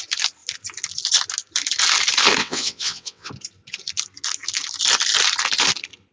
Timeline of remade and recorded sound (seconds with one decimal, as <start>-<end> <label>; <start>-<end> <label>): 0.0-2.4 recorded; 2.4-3.3 remade; 3.3-6.1 recorded